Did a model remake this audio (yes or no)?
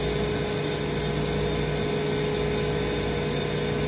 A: no